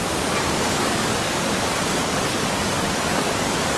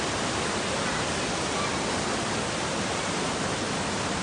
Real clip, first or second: second